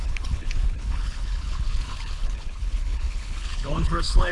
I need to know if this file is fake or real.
fake